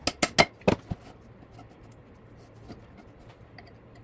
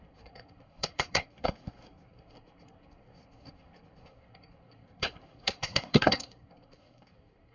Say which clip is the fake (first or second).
second